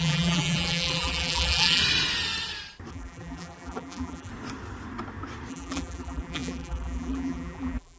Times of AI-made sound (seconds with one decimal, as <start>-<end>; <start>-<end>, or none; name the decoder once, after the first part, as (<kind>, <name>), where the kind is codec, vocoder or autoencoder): 0.0-1.8 (vocoder, BigVGAN v2); 2.9-4.3; 5.5-8.0